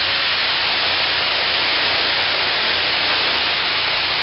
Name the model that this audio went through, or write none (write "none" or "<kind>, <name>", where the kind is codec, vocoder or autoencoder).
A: none